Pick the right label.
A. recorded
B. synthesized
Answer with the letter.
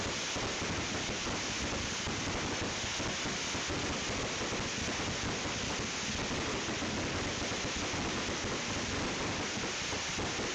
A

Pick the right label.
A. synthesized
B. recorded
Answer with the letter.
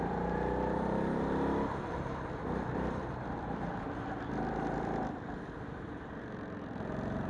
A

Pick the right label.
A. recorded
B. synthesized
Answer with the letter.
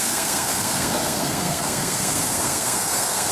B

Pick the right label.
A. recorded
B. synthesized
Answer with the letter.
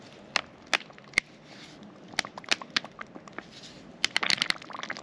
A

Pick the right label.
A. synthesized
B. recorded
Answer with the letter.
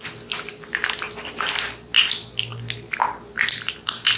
B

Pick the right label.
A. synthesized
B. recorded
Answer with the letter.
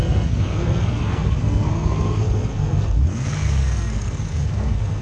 A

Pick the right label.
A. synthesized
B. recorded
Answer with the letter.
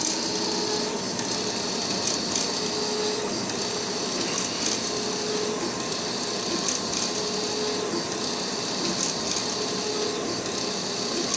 B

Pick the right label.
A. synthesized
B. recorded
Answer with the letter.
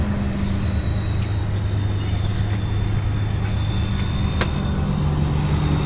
B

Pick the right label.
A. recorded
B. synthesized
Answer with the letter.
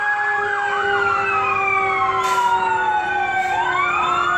A